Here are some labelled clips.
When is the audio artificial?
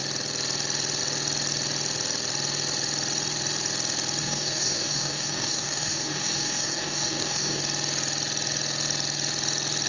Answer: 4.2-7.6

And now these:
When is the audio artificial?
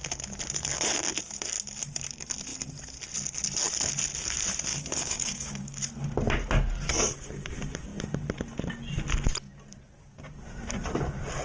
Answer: 4.7-5.8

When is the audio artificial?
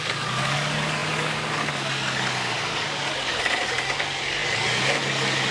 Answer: 0.0-5.5